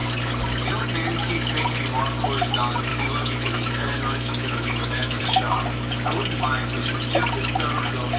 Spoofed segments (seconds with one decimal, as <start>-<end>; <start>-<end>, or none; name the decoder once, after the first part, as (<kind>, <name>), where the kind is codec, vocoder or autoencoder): 2.9-5.2 (autoencoder, DAC-VAE)